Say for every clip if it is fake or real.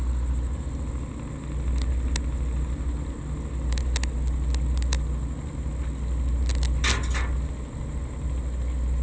real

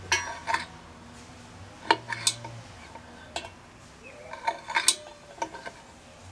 real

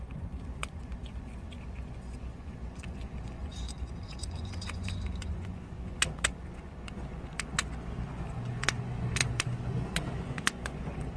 fake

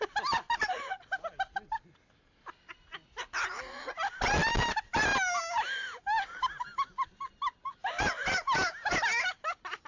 real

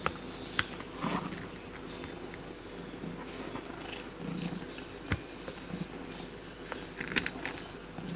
real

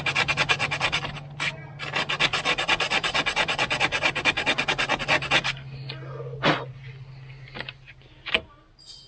real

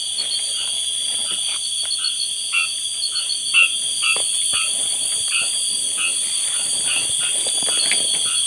real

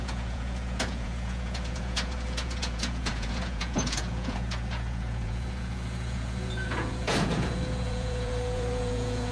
fake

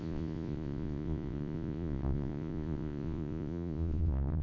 fake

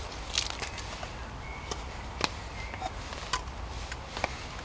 real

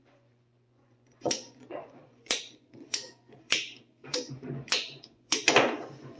fake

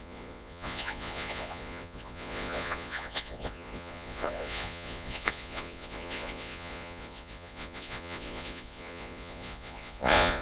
fake